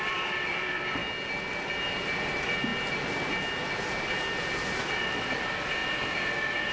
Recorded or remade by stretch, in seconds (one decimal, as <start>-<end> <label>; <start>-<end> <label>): 0.0-1.0 remade; 1.0-1.9 recorded; 1.9-2.7 remade; 2.7-3.7 recorded; 3.7-5.8 remade; 5.8-6.7 recorded